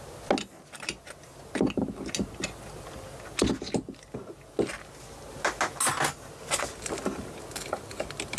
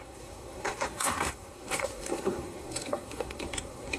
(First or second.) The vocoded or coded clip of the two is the second